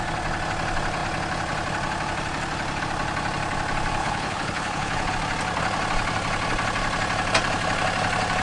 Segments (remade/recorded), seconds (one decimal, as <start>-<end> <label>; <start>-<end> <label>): 0.0-4.0 recorded; 4.0-5.1 remade; 5.1-8.4 recorded